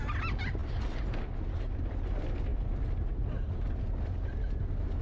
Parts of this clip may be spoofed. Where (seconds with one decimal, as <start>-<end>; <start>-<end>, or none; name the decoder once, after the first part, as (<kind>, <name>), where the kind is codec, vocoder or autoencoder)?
none